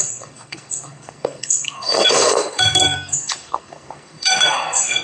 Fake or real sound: fake